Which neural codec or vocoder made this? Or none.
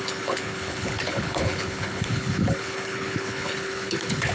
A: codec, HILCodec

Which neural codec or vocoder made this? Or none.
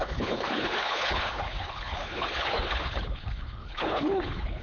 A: codec, HILCodec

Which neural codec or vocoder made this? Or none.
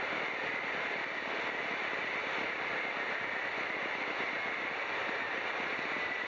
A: none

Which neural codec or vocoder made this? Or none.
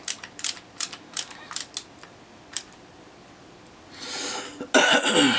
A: none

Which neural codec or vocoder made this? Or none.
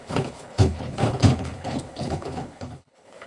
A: codec, HILCodec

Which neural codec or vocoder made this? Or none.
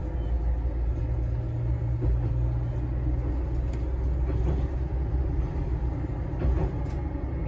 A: none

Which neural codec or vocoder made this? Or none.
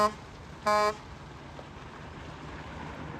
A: none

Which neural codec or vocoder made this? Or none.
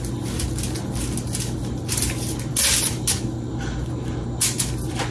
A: none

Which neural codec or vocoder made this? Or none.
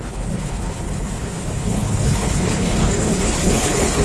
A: codec, HILCodec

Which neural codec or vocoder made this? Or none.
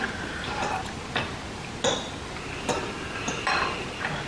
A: none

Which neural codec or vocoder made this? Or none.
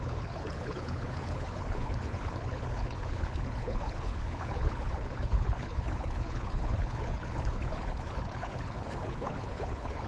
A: codec, HILCodec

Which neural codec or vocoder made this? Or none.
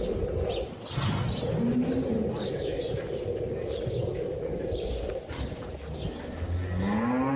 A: none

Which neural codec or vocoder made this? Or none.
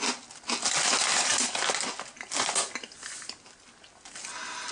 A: none